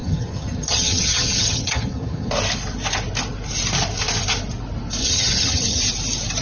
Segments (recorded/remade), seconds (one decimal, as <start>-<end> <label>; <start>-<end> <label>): 0.0-2.3 remade; 2.3-5.0 recorded; 5.0-5.8 remade; 5.8-6.4 recorded